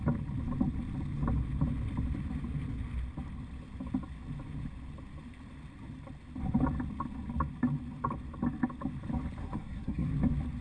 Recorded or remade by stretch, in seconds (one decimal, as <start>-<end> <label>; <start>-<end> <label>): 0.0-9.4 recorded; 9.4-10.1 remade; 10.1-10.6 recorded